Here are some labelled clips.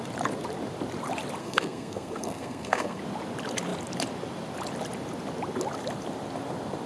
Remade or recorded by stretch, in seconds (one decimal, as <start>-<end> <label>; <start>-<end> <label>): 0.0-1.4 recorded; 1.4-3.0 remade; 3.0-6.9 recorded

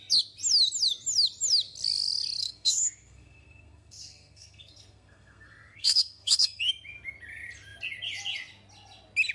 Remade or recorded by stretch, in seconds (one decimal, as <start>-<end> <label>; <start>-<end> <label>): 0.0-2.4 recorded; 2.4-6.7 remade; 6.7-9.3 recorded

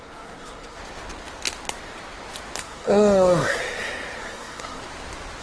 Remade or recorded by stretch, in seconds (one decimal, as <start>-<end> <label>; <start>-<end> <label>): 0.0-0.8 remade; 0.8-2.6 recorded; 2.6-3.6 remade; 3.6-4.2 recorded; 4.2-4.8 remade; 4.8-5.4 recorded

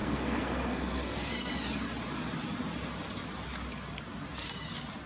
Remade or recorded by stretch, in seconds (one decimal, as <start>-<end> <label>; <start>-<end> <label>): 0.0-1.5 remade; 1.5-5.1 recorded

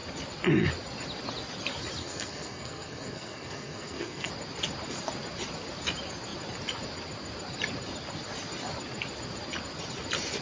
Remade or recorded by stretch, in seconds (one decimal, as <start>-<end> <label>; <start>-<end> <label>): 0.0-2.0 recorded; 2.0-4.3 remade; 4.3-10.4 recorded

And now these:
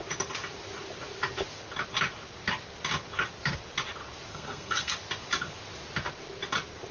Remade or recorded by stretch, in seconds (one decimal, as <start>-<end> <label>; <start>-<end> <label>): 0.0-4.3 recorded; 4.3-4.9 remade; 4.9-6.9 recorded

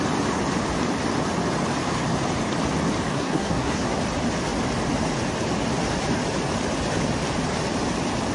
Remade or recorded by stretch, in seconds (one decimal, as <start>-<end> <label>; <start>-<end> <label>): 0.0-3.1 recorded; 3.1-4.0 remade; 4.0-8.3 recorded